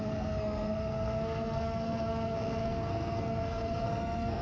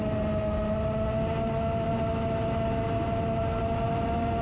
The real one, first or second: second